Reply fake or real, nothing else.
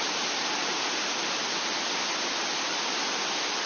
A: real